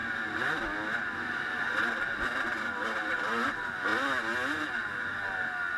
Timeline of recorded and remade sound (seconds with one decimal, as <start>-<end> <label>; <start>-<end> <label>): 0.0-5.8 recorded